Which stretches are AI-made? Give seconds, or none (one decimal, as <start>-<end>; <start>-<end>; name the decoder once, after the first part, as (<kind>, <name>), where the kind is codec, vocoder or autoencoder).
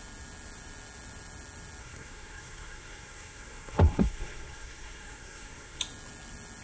1.8-5.8 (codec, SNAC)